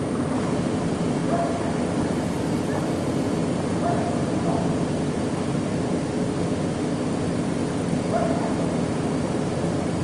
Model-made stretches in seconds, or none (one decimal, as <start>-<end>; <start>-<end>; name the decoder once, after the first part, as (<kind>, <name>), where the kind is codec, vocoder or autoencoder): 0.0-1.2 (vocoder, BigVGAN v2); 1.9-3.4; 6.7-7.6; 8.3-10.0